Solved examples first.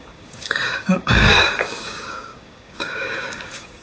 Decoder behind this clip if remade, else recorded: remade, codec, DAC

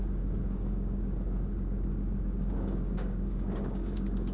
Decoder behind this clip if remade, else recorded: remade, codec, DAC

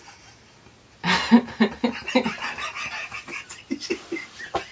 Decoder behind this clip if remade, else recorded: recorded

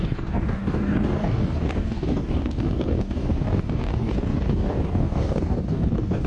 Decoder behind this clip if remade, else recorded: remade, codec, DAC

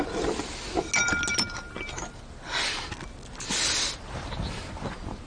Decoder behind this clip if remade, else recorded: recorded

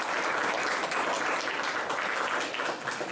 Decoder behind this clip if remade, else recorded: recorded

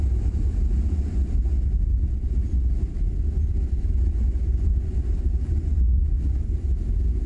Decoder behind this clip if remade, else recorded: recorded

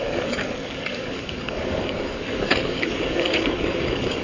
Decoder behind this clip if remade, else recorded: remade, codec, DAC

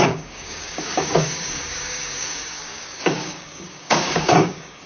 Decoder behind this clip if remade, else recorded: remade, codec, DAC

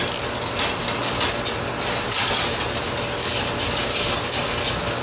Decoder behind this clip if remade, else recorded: recorded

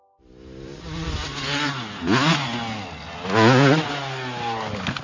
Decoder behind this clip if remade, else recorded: recorded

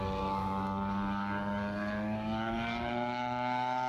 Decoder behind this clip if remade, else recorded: remade, codec, DAC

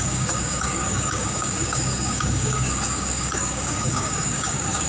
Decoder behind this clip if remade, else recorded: remade, codec, DAC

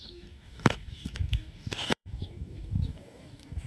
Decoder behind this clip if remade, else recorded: remade, codec, DAC